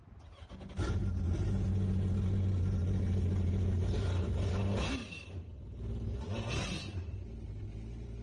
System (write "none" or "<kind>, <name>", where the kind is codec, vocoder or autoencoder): none